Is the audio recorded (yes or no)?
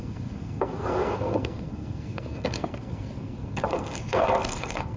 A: no